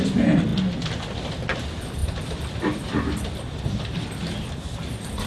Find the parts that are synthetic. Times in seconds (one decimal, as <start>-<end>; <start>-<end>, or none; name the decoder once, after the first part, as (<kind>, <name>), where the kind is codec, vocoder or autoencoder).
0.0-5.3 (vocoder, BigVGAN v2)